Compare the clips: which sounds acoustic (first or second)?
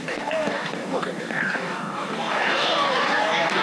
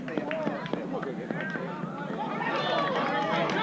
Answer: second